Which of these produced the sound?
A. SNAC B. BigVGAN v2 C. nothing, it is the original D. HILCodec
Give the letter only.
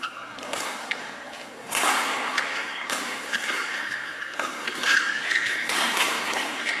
A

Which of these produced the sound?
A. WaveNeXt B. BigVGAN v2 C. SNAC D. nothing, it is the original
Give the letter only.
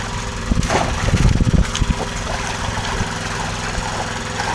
D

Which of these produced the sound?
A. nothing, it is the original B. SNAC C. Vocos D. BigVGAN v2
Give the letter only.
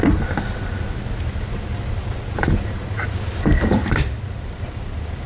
A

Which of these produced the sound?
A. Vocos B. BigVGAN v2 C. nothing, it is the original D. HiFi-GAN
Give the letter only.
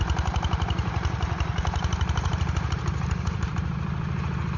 B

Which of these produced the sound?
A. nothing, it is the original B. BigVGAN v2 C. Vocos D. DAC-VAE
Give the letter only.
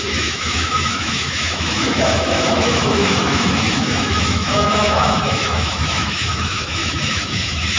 D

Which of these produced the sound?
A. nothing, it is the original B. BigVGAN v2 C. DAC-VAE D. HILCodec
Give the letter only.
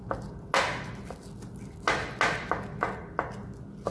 A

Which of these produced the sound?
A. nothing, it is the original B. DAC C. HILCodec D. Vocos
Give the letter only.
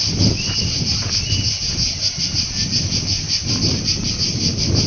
A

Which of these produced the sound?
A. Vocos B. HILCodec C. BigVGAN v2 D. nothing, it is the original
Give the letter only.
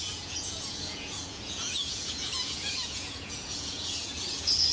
A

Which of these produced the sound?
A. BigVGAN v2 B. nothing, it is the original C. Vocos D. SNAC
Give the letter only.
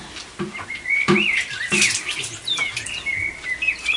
B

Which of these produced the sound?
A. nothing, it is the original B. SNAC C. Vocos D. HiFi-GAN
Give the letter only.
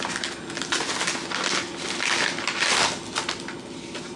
A